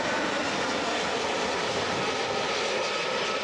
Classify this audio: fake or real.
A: real